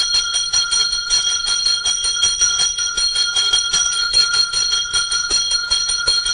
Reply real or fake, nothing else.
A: fake